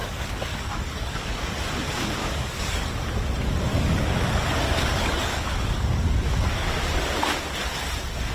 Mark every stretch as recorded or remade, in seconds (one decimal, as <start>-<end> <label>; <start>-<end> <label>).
0.0-1.6 remade; 1.6-2.2 recorded; 2.2-2.9 remade; 2.9-3.7 recorded; 3.7-6.8 remade; 6.8-8.3 recorded